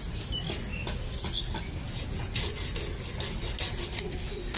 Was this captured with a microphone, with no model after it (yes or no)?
yes